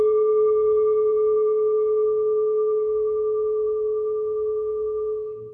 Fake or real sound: fake